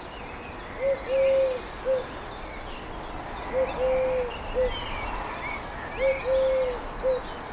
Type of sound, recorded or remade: recorded